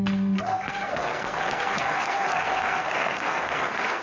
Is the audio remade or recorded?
remade